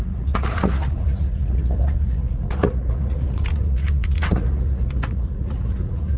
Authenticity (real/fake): fake